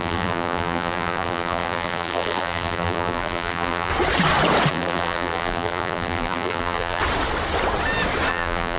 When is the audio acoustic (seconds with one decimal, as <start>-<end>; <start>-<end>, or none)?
3.9-4.7; 7.0-8.3